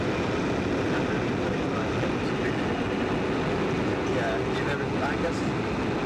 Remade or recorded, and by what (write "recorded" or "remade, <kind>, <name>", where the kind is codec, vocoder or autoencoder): recorded